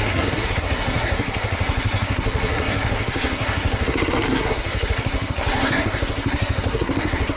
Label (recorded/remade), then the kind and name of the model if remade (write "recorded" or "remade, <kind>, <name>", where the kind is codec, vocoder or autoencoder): remade, codec, SNAC